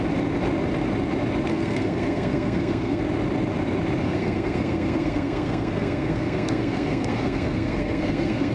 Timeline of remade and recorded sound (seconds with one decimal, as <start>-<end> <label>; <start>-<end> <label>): 0.0-1.5 recorded; 1.5-3.0 remade; 3.0-4.0 recorded; 4.0-8.5 remade